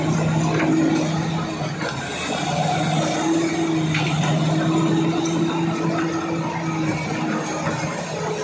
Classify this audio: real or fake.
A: real